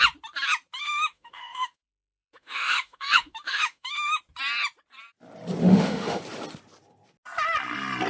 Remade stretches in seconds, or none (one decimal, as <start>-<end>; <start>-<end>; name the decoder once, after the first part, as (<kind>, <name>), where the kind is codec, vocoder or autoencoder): 0.8-4.2 (autoencoder, DAC-VAE); 5.6-6.2